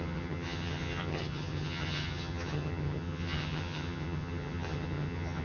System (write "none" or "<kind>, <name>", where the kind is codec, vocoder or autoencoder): vocoder, HiFi-GAN